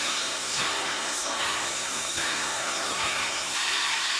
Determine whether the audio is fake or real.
fake